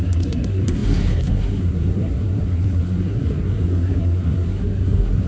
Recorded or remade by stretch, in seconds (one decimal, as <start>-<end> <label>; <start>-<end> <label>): 0.0-5.3 remade